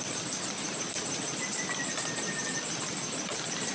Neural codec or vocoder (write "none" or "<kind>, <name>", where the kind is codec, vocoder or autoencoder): none